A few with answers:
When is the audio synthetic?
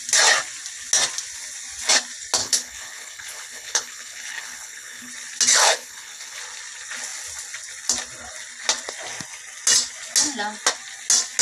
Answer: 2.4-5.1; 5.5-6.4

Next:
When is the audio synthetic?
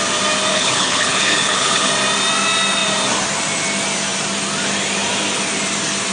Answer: 0.5-1.9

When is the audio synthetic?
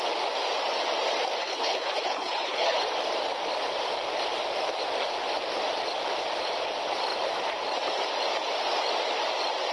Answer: 1.4-2.8